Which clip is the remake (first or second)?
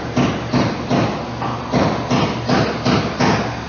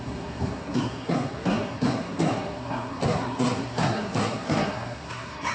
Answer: second